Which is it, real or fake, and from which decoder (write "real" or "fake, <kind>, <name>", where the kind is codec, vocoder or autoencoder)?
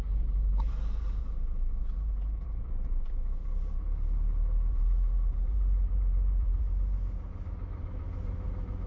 fake, vocoder, BigVGAN v2